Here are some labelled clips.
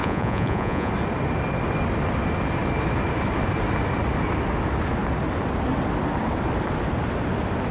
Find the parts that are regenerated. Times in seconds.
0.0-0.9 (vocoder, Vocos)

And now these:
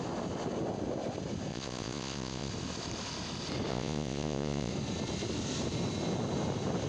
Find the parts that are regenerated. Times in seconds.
1.5-2.5 (vocoder, Vocos); 3.7-4.7

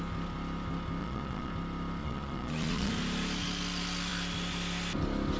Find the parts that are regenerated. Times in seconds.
1.0-1.5 (vocoder, Vocos); 2.0-2.9

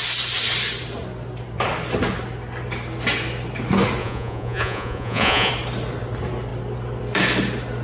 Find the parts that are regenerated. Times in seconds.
4.0-5.5 (vocoder, Vocos)

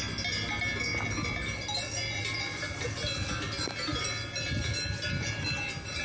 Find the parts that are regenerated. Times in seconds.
none

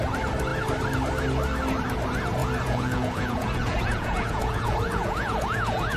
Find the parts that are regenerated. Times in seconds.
2.4-6.0 (vocoder, Vocos)